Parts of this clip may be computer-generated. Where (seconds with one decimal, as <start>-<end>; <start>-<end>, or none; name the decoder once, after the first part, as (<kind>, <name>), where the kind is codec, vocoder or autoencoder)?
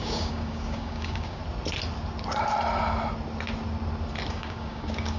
0.0-1.4 (codec, DAC); 4.3-5.2